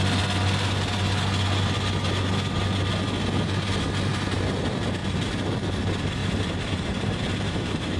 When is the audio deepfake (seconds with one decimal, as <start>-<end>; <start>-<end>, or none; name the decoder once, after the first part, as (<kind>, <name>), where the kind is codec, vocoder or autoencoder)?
6.2-8.0 (vocoder, BigVGAN v2)